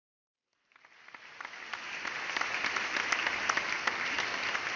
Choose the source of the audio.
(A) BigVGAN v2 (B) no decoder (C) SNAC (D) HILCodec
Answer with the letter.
B